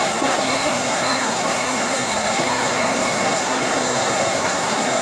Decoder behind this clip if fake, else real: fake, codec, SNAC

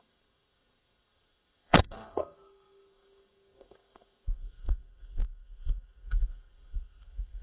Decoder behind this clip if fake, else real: fake, codec, SNAC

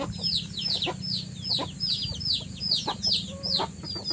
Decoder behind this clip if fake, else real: real